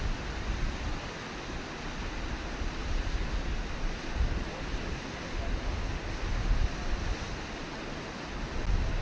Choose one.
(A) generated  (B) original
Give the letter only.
B